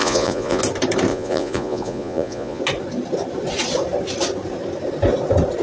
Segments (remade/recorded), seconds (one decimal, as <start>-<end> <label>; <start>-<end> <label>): 0.0-0.6 remade; 0.6-1.1 recorded; 1.1-2.6 remade; 2.6-5.6 recorded